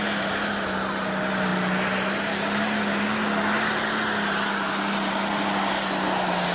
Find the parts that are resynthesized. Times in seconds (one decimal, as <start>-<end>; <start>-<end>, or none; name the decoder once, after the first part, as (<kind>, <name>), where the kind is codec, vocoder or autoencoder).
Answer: none